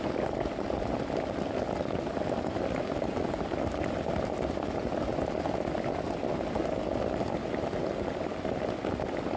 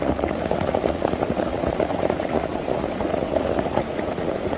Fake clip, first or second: second